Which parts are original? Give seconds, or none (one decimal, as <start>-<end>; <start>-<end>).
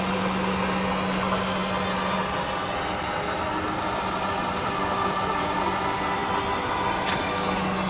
0.0-7.9